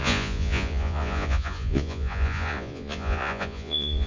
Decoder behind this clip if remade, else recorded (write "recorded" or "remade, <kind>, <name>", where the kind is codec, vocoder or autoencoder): remade, vocoder, Vocos